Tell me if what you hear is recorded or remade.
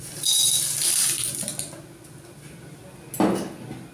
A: recorded